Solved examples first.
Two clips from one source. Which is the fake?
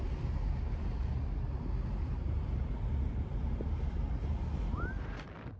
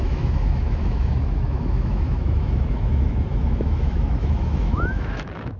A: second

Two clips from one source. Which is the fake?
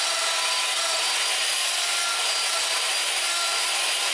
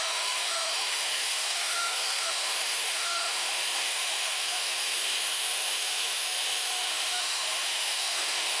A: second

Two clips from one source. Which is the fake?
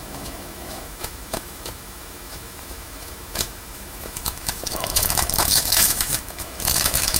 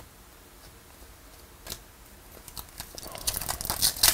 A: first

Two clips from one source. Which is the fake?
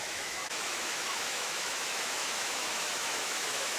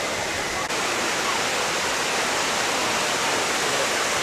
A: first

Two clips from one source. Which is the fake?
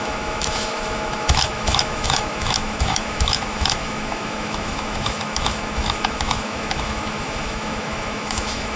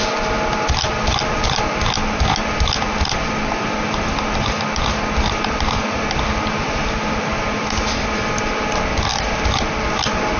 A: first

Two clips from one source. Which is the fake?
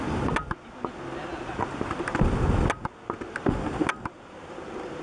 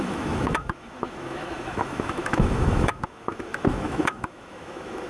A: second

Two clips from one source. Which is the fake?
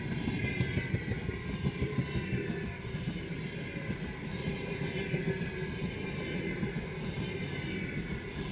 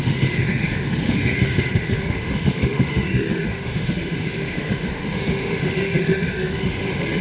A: second